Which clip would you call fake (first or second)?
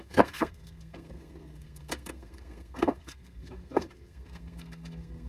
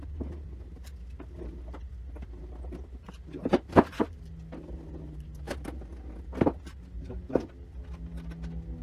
first